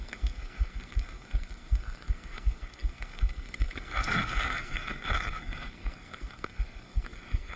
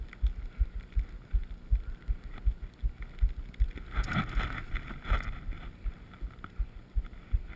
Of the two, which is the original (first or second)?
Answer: second